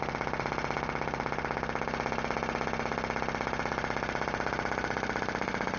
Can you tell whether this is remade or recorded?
recorded